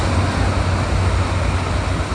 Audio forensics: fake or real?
real